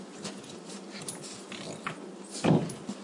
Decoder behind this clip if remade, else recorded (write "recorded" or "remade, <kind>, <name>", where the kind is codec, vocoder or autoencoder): recorded